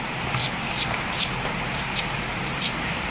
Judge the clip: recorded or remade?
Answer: recorded